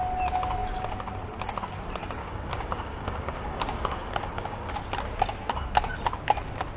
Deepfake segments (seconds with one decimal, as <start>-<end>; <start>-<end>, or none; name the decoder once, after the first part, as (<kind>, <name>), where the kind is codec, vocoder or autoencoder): 2.2-4.7 (codec, DAC)